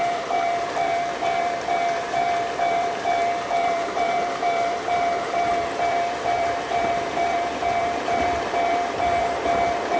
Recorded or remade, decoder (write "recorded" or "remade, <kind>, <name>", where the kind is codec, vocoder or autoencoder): remade, vocoder, BigVGAN v2